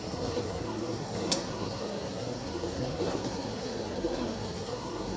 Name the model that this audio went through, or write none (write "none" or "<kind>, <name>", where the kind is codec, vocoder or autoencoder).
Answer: codec, SNAC